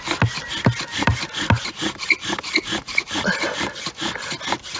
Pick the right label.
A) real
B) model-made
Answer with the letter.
A